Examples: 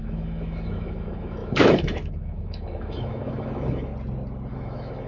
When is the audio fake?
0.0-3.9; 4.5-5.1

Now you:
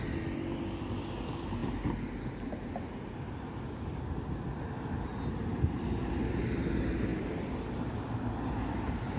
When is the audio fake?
none

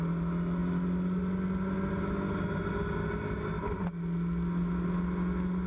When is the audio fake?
none

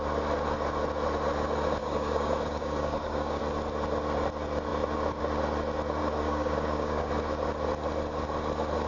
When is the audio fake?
1.8-3.4; 6.0-7.1